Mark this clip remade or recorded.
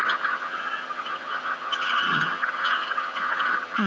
remade